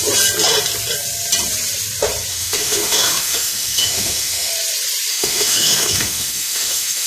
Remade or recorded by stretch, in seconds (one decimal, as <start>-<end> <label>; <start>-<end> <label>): 0.0-2.3 recorded; 2.3-4.5 remade; 4.5-5.1 recorded; 5.1-7.1 remade